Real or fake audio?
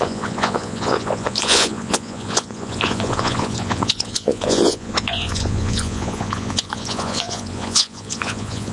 fake